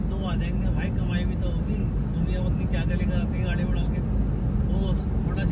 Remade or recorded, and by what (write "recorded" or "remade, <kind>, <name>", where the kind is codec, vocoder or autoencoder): recorded